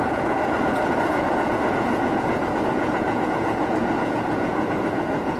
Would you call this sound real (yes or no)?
no